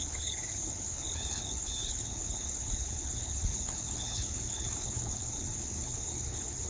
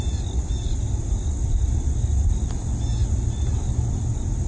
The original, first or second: second